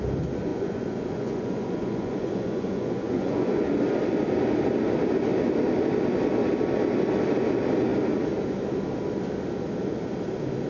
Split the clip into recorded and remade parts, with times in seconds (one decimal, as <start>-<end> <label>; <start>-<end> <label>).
0.0-0.5 recorded; 0.5-3.7 remade; 3.7-10.7 recorded